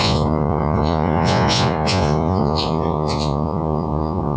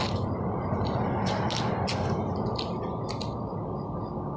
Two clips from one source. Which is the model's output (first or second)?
first